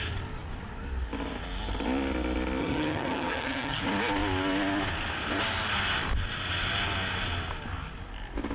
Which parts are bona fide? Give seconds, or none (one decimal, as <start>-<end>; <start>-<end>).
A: 0.0-2.6; 3.8-8.5